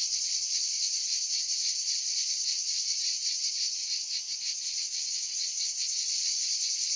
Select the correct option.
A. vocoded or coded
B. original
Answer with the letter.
A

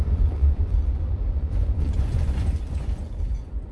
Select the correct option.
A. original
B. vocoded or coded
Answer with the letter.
B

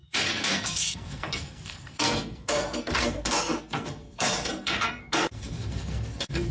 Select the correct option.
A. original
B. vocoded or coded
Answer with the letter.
B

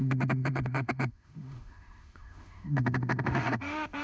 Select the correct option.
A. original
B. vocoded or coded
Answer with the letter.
B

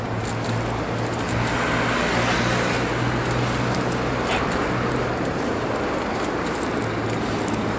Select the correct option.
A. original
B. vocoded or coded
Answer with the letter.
A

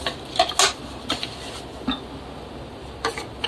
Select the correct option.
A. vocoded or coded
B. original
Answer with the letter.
B